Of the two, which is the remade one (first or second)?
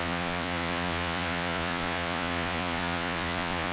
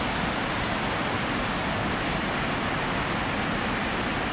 first